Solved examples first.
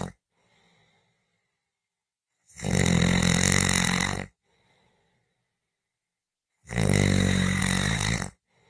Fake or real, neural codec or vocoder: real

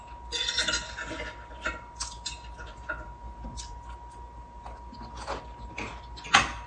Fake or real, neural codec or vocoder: real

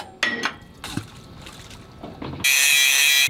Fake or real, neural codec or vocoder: real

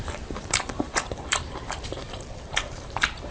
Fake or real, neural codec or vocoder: fake, vocoder, BigVGAN v2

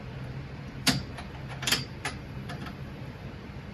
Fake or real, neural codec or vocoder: fake, vocoder, BigVGAN v2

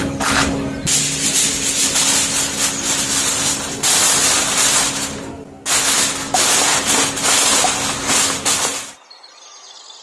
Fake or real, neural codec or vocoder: real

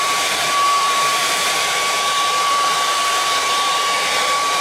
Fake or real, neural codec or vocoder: fake, vocoder, BigVGAN v2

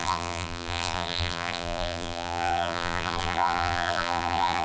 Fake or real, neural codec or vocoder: fake, vocoder, BigVGAN v2